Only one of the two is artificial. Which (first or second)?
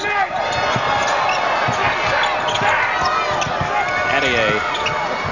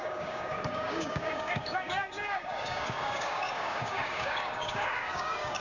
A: second